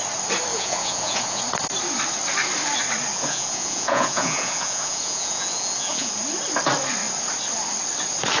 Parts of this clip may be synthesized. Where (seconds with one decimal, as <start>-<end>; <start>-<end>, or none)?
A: 0.5-1.4; 3.1-6.1